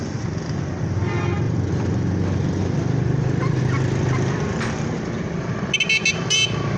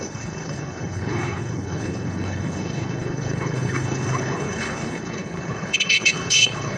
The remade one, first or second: second